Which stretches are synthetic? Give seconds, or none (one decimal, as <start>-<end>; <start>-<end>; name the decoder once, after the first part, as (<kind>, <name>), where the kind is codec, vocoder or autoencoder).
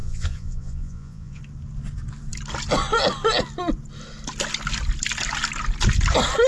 0.0-1.4 (vocoder, Vocos)